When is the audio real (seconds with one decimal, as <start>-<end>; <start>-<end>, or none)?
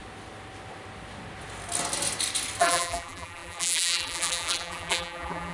0.0-2.6